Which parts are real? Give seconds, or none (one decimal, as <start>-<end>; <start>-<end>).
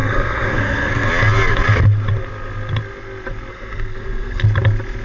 1.1-3.5; 4.4-5.0